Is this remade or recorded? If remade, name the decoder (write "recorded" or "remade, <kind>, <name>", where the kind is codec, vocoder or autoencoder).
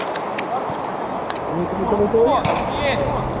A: recorded